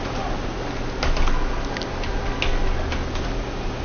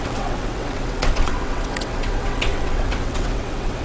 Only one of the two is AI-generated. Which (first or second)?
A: second